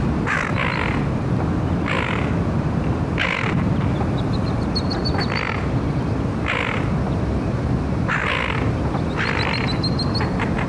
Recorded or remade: recorded